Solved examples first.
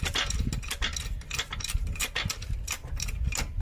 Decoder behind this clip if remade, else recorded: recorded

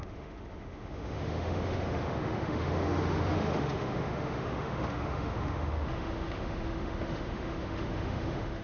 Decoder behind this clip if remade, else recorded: remade, autoencoder, DAC-VAE